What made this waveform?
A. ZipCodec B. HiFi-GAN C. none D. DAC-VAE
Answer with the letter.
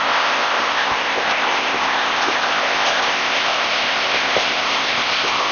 A